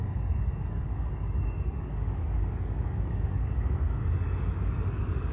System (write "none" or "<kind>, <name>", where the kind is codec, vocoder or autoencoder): codec, DAC